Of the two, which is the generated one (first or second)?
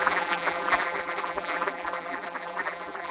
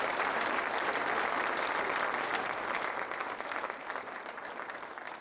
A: first